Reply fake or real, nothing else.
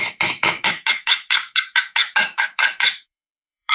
fake